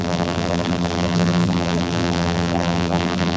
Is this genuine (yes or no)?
no